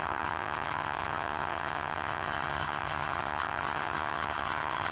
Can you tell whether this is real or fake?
fake